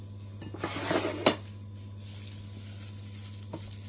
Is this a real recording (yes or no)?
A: yes